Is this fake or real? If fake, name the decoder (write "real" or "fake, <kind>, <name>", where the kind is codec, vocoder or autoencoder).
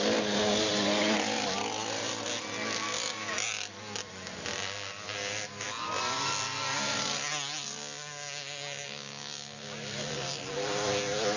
real